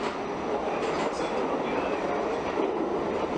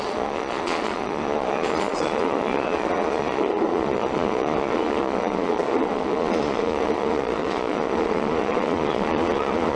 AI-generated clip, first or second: second